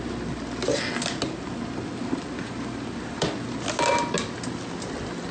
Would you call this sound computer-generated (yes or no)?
no